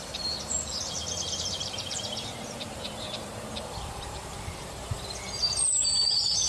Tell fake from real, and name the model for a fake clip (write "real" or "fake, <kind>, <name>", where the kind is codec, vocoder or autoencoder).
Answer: fake, vocoder, BigVGAN v2